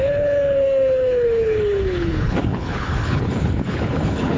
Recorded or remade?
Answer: remade